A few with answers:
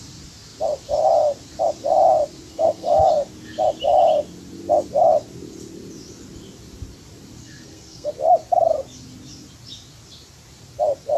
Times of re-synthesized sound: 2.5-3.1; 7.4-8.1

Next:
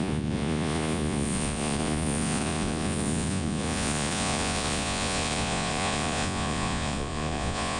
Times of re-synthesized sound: 0.0-7.8

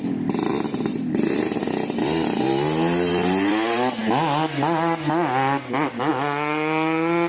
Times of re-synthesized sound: 0.0-0.5; 3.1-4.0; 6.1-7.3

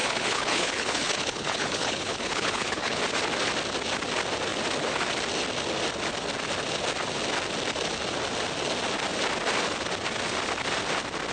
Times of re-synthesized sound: 0.0-3.0

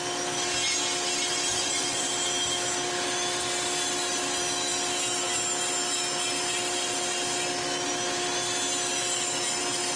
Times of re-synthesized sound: 1.5-2.1

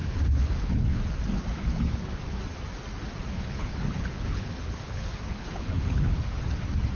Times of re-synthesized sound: 0.0-1.0; 1.6-2.4; 3.3-6.2